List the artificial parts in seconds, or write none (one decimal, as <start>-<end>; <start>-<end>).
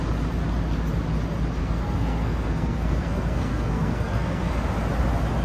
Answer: 1.6-4.5